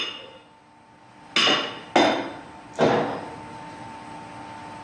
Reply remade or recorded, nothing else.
recorded